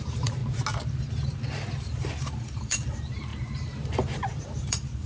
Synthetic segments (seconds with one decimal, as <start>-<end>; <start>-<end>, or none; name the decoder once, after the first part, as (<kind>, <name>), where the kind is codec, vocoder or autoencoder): 0.0-0.4 (vocoder, BigVGAN v2); 1.1-5.1